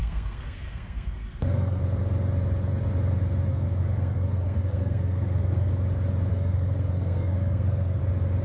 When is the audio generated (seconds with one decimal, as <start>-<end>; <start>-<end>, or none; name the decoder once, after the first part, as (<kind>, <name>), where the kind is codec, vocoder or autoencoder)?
0.0-1.8 (codec, SNAC); 3.5-5.7; 6.3-8.0